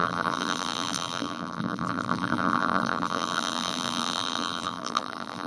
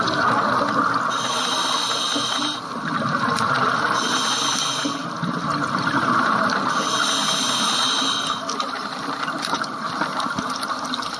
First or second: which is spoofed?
first